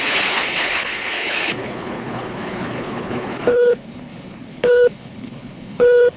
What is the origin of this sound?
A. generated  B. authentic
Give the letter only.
A